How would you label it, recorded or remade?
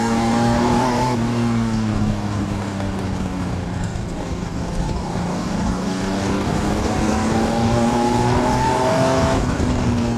remade